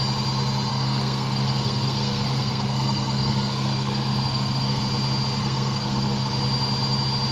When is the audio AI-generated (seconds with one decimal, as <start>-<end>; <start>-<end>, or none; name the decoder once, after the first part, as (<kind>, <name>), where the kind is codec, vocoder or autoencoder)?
0.7-4.8 (codec, SNAC); 5.4-6.3